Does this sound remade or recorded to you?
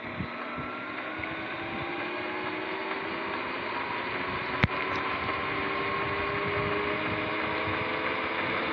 recorded